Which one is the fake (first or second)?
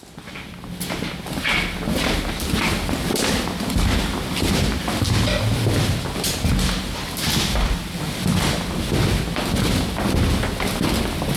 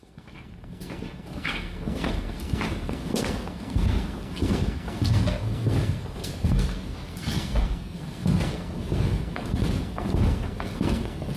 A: second